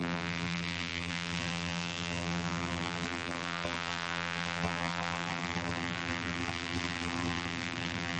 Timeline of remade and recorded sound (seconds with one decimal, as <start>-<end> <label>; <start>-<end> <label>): 0.0-8.2 remade